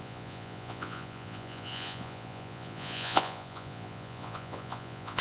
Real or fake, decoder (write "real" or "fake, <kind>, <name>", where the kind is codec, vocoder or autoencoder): fake, vocoder, Vocos